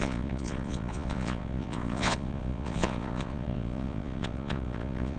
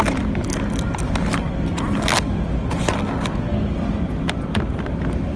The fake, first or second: first